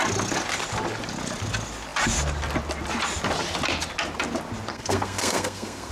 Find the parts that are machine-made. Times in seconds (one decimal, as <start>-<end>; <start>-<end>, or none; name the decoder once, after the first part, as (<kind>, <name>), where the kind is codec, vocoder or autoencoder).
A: 4.7-5.9 (codec, SNAC)